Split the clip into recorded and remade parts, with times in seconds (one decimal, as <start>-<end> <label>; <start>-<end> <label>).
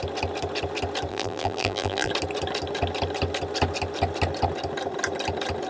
0.0-1.1 recorded; 1.1-2.1 remade; 2.1-5.7 recorded